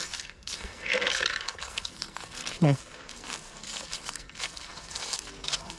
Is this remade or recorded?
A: remade